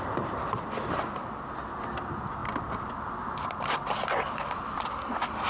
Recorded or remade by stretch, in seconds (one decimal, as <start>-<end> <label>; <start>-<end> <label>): 0.0-5.5 recorded